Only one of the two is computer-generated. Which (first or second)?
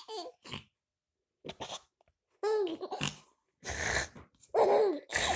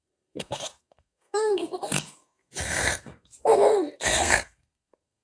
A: second